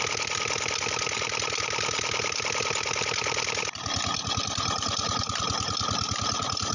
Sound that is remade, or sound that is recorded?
recorded